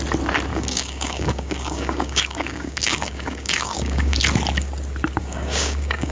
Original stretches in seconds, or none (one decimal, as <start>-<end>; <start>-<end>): 0.0-0.5; 4.2-5.2